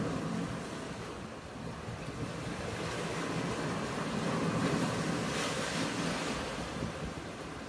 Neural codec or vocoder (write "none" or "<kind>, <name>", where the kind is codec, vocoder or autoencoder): none